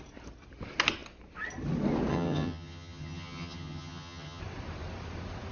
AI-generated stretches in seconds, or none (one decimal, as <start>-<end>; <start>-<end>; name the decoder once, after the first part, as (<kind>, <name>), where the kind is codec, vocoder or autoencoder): 2.1-4.4 (vocoder, HiFi-GAN)